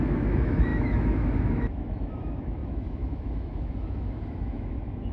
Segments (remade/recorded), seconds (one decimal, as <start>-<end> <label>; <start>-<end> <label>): 0.0-5.1 remade